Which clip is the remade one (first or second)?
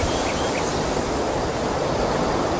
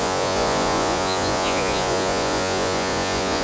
second